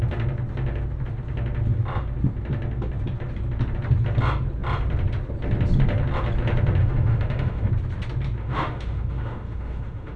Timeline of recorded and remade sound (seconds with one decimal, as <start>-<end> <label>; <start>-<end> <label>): 0.0-6.8 recorded; 6.8-7.7 remade; 7.7-8.4 recorded; 8.4-10.2 remade